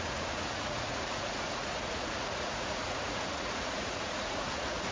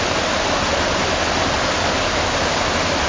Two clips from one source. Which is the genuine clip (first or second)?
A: second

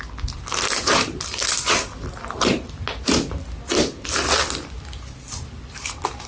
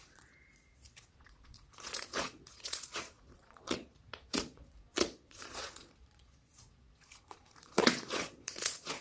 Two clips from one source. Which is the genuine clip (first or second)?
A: first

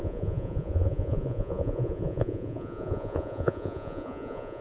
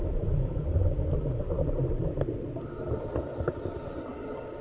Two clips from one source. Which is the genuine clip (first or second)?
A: second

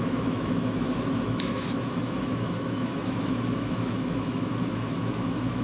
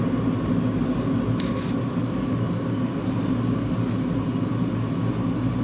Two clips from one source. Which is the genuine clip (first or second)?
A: second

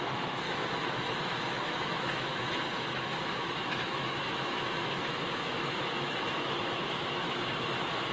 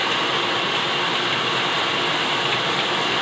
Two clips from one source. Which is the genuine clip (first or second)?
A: second